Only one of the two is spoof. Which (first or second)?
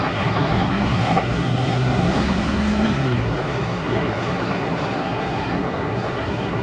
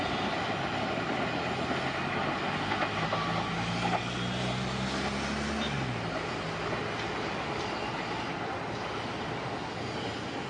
first